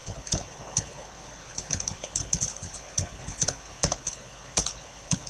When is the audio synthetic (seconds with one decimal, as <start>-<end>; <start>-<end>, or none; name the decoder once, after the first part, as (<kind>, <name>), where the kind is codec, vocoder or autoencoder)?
0.0-5.3 (codec, HILCodec)